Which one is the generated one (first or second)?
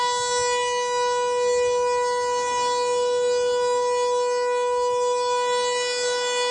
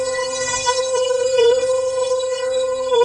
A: second